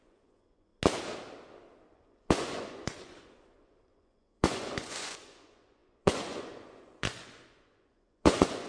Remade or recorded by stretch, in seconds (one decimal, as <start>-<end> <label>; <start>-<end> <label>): 0.0-0.7 remade; 0.7-1.9 recorded; 1.9-8.7 remade